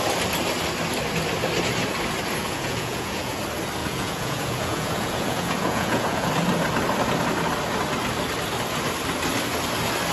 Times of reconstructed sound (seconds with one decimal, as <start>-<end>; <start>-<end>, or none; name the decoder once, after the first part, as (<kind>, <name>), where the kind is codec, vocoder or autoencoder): 2.4-3.4 (vocoder, Vocos); 3.8-6.3